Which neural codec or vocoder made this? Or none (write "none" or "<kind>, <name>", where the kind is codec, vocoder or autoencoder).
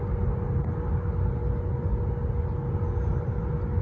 none